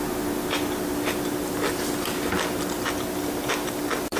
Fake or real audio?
real